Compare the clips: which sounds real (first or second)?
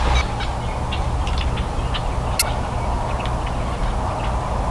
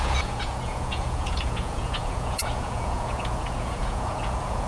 first